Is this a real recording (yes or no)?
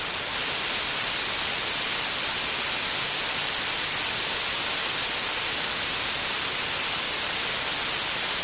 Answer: yes